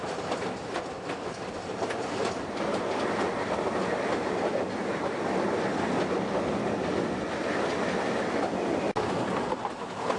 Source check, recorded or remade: recorded